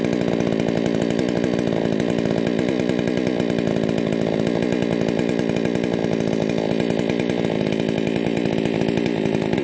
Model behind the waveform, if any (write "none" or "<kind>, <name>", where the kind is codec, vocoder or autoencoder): none